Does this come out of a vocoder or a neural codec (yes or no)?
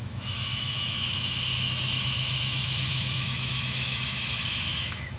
yes